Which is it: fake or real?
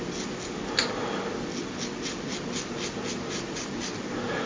real